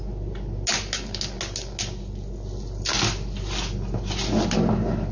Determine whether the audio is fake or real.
real